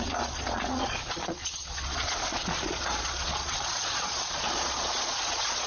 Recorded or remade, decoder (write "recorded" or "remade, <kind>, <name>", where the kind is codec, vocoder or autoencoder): remade, vocoder, Vocos